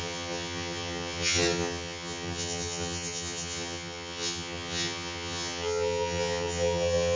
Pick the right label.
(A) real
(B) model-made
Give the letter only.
B